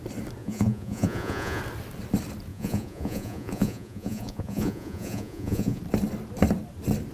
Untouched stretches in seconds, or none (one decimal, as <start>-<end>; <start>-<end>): 0.0-0.4; 1.6-2.5; 5.8-7.1